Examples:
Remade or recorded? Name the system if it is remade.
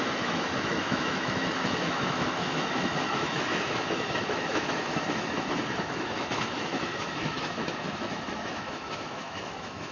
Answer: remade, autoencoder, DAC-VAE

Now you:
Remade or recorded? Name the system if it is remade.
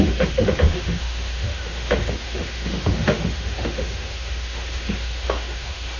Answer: remade, autoencoder, DAC-VAE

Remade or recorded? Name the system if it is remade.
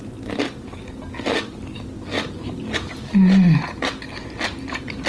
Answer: recorded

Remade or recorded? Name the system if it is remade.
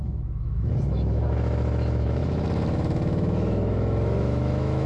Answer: remade, autoencoder, DAC-VAE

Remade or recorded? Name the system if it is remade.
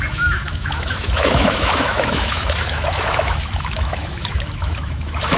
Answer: remade, autoencoder, DAC-VAE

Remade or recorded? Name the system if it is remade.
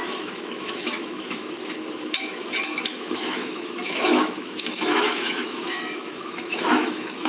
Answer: remade, autoencoder, DAC-VAE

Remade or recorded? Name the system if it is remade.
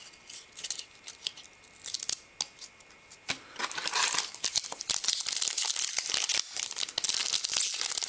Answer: recorded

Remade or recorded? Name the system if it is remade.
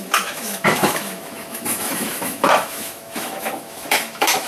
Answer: remade, autoencoder, DAC-VAE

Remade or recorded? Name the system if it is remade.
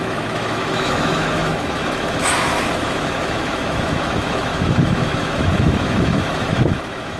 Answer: remade, autoencoder, DAC-VAE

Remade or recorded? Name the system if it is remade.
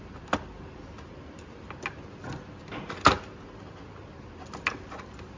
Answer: recorded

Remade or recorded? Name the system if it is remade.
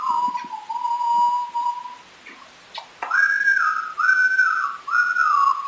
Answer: recorded